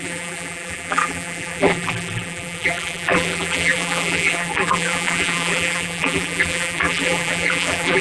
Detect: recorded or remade remade